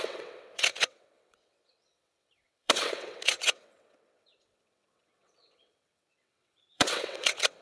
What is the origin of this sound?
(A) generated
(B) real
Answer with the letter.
A